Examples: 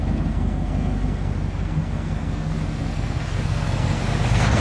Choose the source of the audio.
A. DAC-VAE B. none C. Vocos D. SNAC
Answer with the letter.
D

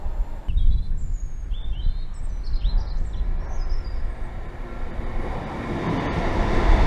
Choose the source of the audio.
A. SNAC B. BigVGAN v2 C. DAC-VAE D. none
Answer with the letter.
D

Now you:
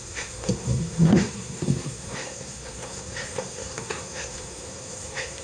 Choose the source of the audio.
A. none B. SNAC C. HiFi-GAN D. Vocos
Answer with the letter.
B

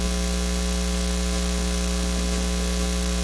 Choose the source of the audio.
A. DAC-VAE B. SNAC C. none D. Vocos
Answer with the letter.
C